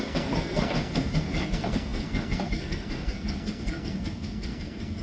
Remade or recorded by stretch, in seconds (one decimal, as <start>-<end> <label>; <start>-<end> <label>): 0.0-5.0 remade